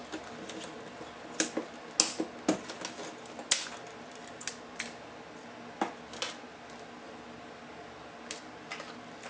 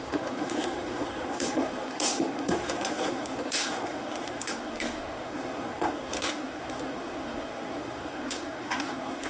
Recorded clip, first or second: first